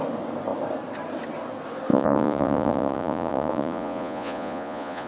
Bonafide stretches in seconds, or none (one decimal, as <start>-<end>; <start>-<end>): 0.0-1.9